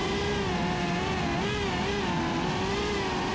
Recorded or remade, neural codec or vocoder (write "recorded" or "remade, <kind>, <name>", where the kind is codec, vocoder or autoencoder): recorded